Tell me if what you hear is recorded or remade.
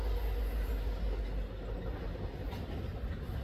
recorded